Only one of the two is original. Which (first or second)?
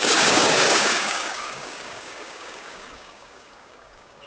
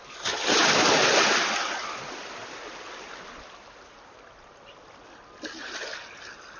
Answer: second